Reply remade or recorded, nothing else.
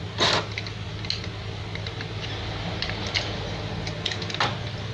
recorded